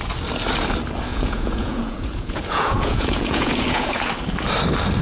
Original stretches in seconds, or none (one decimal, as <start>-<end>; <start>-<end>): 0.0-1.1; 4.1-5.0